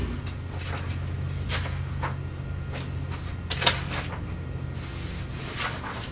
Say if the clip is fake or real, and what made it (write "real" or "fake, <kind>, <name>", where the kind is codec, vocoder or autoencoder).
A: real